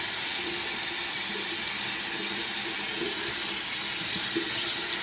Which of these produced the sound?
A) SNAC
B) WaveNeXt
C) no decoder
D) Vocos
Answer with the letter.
C